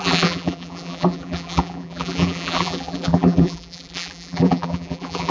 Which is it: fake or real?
fake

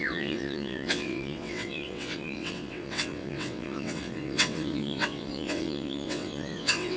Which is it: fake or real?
fake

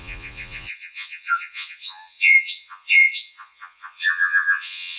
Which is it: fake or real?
fake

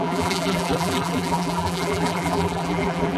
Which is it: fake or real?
fake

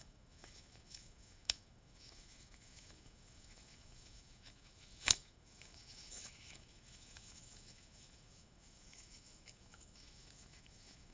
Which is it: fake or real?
fake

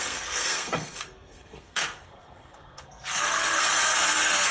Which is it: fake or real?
fake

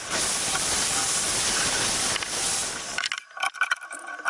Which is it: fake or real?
real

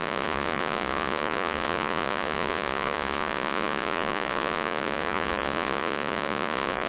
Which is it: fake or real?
fake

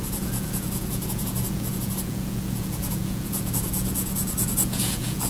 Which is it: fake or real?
fake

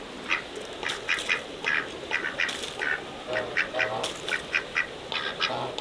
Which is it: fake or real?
real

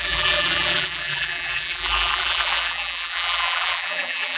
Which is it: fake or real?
fake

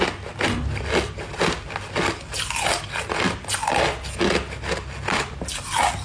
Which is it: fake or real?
real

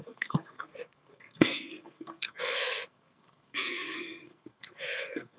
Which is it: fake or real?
fake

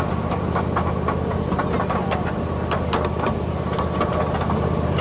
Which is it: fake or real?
real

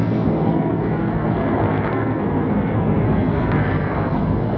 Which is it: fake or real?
fake